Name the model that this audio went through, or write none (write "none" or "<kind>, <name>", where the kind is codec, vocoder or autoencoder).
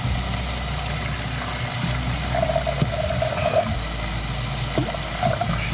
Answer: none